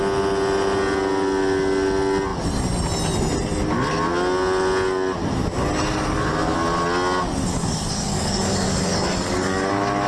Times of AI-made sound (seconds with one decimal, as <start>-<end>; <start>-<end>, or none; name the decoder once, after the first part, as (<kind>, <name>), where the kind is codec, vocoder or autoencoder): 7.5-9.7 (codec, DAC)

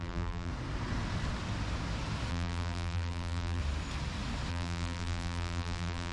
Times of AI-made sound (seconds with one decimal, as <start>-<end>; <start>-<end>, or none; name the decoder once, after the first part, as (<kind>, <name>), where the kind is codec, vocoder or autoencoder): 0.0-0.5 (vocoder, BigVGAN v2); 2.3-3.6; 4.5-6.1

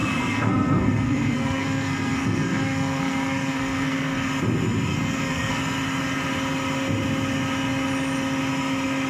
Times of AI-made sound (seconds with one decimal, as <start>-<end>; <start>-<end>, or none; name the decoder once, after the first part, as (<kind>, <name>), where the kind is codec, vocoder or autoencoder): 0.0-4.3 (codec, SNAC); 4.9-5.6

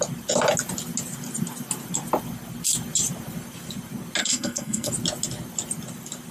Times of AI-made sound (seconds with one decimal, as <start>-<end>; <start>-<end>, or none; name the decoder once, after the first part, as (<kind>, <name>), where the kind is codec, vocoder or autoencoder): 4.2-4.9 (codec, SNAC)